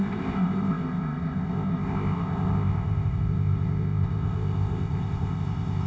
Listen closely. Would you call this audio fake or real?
fake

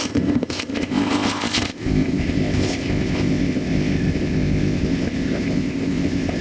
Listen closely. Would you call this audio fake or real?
fake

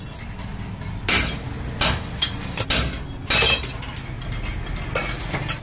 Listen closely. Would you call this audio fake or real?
real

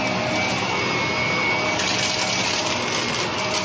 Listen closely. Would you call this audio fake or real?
real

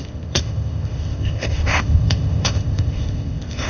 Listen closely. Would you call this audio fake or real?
fake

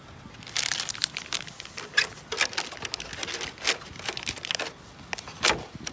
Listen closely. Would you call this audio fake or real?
real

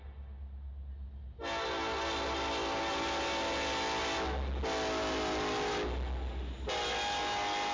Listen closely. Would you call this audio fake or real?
real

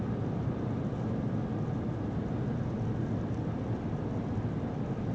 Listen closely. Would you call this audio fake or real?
real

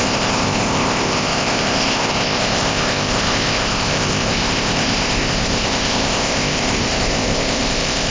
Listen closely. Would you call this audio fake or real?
fake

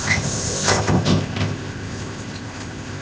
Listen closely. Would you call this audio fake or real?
fake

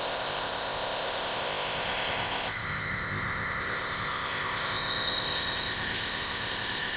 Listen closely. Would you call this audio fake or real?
fake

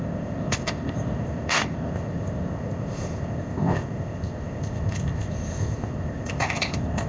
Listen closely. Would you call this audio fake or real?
fake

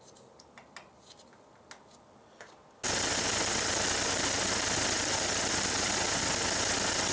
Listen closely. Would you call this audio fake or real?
real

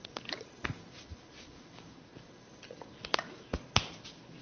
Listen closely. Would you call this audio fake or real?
real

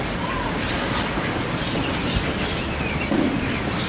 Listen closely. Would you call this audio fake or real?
real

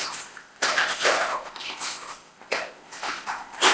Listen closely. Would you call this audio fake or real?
fake